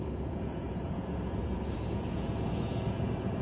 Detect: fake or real fake